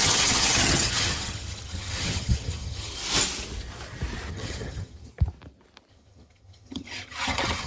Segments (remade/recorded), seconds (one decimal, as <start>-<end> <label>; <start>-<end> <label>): 0.0-3.0 remade; 3.0-4.3 recorded; 4.3-5.1 remade; 5.1-5.9 recorded; 5.9-7.7 remade